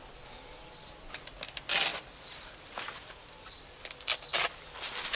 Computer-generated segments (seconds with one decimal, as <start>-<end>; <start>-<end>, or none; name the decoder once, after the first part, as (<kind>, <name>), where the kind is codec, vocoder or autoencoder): none